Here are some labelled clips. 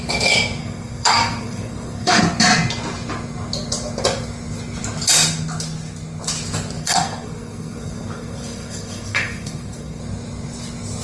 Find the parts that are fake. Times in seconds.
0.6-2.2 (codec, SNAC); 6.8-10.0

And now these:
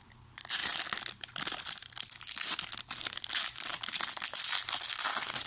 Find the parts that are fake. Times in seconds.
none

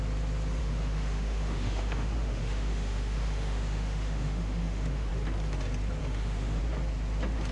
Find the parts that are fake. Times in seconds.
0.6-5.1 (autoencoder, DAC-VAE); 6.0-6.6

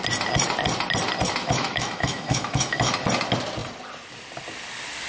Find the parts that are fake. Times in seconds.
1.4-2.9 (autoencoder, DAC-VAE)

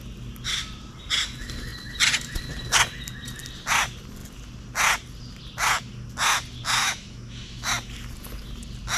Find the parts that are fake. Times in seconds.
6.8-7.7 (autoencoder, DAC-VAE)

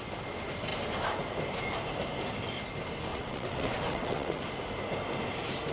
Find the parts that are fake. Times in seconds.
3.1-4.4 (vocoder, WaveNeXt)